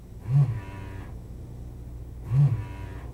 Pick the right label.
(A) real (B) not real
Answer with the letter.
A